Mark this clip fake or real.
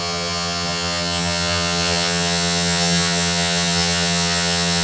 fake